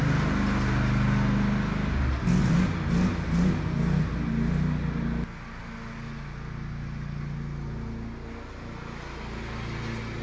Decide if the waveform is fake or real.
real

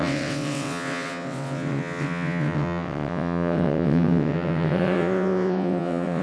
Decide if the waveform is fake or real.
fake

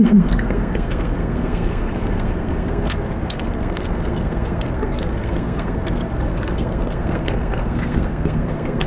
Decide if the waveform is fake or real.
fake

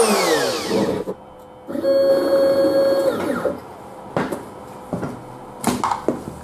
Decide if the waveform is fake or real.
real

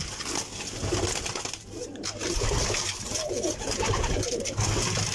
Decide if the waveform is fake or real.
real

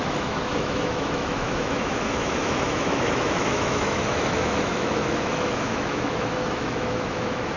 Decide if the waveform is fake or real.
fake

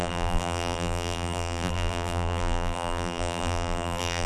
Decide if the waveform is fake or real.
fake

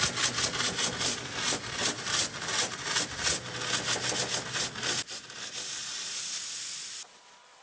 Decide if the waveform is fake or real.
real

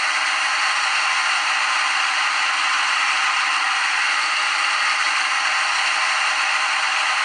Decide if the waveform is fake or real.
real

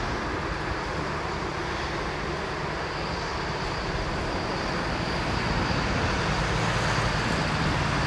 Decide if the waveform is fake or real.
real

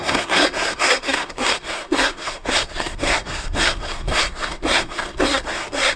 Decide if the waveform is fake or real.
fake